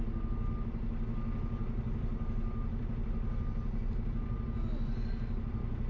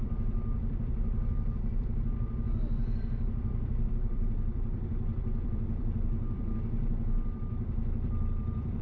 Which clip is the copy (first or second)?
second